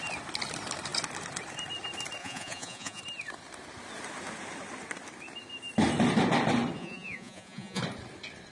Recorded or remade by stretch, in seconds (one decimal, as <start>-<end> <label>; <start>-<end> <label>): 0.0-2.2 recorded; 2.2-3.0 remade; 3.0-6.8 recorded; 6.8-7.8 remade; 7.8-8.5 recorded